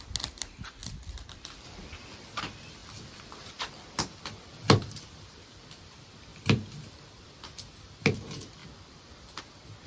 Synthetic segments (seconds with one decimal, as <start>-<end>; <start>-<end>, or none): 0.8-2.4; 2.8-5.8; 6.3-7.0; 8.6-9.4